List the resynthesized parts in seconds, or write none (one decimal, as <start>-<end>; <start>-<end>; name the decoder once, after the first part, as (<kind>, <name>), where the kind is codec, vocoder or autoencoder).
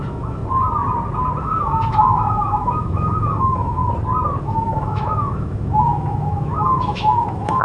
0.0-0.4 (autoencoder, DAC-VAE); 1.4-3.8; 4.4-7.6